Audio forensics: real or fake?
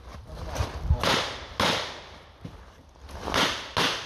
real